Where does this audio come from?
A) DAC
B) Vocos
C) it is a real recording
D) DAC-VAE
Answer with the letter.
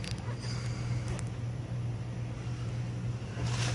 C